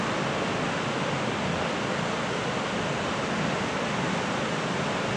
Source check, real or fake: real